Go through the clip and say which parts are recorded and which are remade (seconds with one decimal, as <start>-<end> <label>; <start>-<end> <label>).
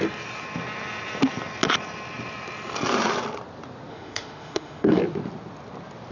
0.0-3.9 recorded; 3.9-5.0 remade; 5.0-6.1 recorded